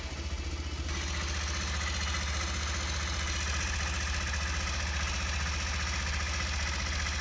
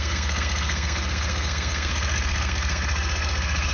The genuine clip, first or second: first